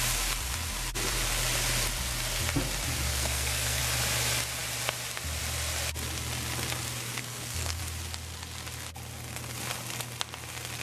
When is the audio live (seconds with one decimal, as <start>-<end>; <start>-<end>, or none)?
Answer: 0.0-3.1; 3.8-7.2; 7.8-10.8